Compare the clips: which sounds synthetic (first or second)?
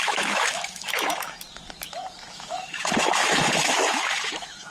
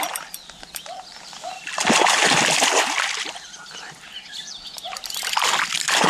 first